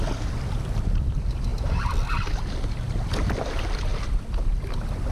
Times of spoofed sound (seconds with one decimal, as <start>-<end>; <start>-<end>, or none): none

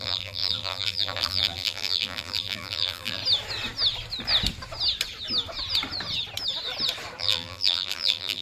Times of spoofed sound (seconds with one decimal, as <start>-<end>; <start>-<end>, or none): 0.0-3.2; 7.2-8.4

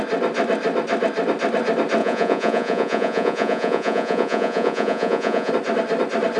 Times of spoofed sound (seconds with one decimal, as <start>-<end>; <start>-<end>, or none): 2.0-5.5

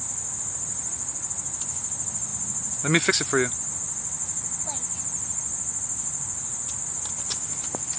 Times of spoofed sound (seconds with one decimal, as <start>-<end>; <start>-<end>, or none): 0.7-1.3

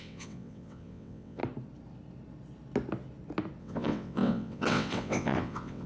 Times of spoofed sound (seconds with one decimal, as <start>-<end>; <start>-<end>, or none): 0.0-1.4; 3.6-5.9

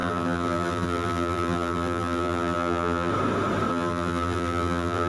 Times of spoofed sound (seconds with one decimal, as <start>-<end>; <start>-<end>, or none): 0.0-3.1; 3.7-5.1

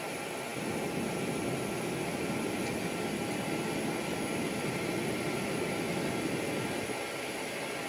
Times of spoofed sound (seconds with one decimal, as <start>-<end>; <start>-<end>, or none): none

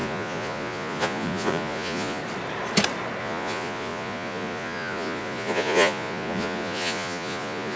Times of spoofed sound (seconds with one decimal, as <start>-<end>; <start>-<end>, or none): 0.0-2.2; 3.2-7.8